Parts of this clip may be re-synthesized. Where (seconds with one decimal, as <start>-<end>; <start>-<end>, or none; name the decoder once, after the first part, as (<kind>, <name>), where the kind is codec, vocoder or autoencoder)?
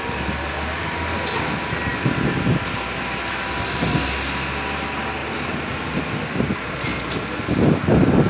5.2-5.8 (vocoder, BigVGAN v2)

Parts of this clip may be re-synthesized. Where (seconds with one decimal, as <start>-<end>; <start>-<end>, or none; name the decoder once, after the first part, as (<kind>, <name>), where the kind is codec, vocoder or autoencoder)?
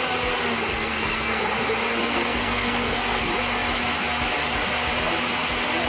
0.7-1.4 (codec, SNAC); 2.0-3.2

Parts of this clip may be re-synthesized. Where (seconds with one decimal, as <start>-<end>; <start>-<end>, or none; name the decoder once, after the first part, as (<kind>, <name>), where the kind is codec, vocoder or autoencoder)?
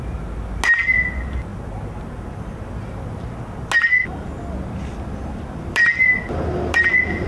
none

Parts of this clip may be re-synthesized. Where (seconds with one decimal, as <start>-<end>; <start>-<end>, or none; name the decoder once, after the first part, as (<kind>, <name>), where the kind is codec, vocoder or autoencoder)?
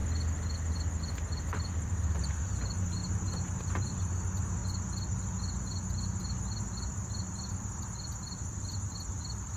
1.7-4.6 (vocoder, BigVGAN v2); 9.2-9.6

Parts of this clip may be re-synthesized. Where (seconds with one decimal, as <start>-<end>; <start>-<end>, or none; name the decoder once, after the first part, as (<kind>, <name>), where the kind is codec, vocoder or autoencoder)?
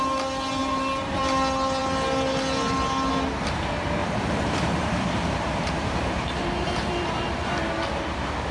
0.6-1.2 (vocoder, BigVGAN v2); 4.0-7.5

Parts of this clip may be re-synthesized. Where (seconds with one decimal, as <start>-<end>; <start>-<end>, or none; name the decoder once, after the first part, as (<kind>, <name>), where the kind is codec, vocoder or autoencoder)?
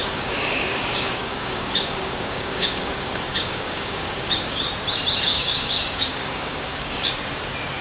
0.0-4.7 (codec, DAC); 5.3-7.1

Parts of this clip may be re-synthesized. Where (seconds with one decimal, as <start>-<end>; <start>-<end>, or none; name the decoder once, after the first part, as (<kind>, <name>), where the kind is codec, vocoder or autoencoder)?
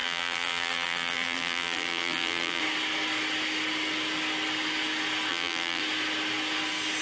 0.0-2.6 (vocoder, BigVGAN v2); 5.3-5.8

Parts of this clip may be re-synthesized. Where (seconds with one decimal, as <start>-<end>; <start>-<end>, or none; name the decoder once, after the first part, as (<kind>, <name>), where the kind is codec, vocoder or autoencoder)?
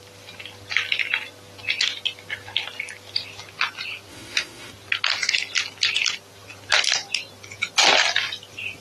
4.1-4.7 (autoencoder, DAC-VAE)